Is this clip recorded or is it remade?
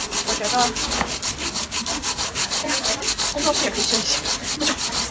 recorded